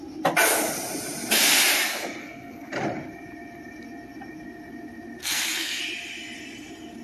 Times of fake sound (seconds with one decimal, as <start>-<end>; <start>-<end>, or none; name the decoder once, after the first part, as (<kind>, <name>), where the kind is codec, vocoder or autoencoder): 2.2-2.7 (codec, SNAC); 5.2-5.8